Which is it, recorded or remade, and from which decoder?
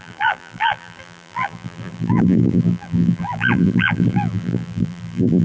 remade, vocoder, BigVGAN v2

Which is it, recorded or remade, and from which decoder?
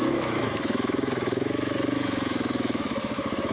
remade, autoencoder, DAC-VAE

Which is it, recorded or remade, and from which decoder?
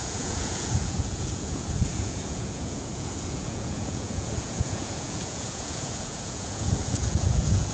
remade, vocoder, Vocos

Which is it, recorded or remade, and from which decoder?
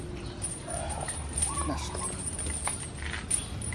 recorded